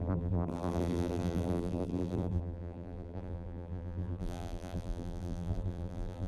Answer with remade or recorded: remade